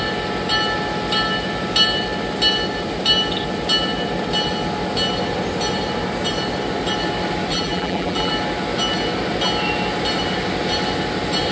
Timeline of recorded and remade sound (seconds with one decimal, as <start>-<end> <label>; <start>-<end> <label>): 0.0-7.5 recorded; 7.5-8.3 remade; 8.3-11.5 recorded